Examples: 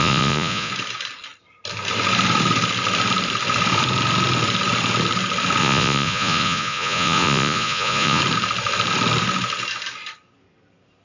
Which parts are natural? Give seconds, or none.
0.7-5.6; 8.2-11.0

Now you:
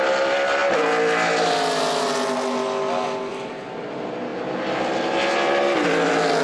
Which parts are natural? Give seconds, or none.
0.0-6.4

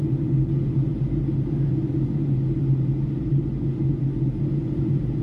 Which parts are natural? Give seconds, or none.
0.0-5.2